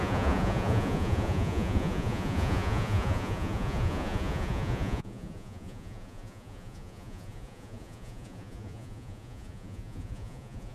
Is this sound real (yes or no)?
no